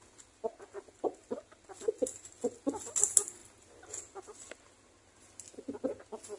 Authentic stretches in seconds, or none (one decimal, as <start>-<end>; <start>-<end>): 0.0-6.4